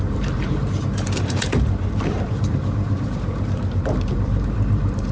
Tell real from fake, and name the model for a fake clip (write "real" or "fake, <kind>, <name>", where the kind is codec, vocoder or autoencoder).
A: fake, vocoder, BigVGAN v2